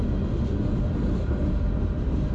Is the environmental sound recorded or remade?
recorded